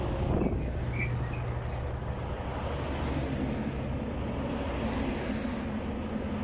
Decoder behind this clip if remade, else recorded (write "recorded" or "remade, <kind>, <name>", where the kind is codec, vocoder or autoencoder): recorded